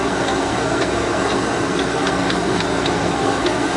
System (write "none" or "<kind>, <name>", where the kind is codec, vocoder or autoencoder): codec, SNAC